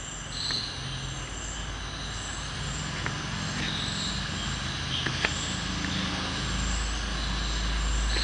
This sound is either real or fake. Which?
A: real